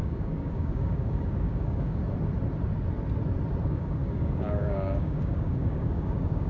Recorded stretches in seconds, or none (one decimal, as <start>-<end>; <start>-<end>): 2.0-3.6